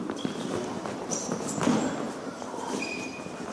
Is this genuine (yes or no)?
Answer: yes